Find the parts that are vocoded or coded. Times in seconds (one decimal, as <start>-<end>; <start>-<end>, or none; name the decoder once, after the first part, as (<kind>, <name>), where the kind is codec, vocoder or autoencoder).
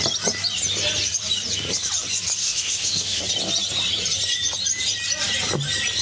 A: 2.4-3.2 (autoencoder, DAC-VAE)